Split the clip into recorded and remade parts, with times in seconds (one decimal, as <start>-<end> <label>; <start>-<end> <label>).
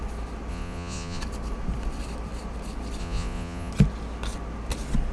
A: 0.0-0.5 recorded; 0.5-1.2 remade; 1.2-3.0 recorded; 3.0-3.7 remade; 3.7-5.1 recorded